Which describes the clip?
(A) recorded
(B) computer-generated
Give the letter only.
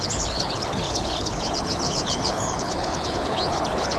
B